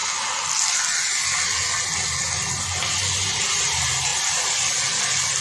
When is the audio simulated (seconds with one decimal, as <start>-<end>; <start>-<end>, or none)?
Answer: none